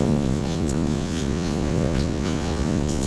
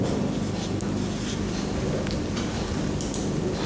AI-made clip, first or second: first